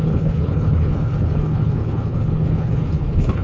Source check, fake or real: fake